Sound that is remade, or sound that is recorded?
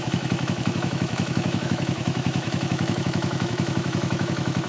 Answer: remade